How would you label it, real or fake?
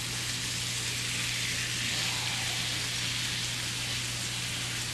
real